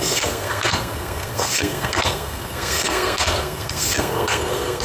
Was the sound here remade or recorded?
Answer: remade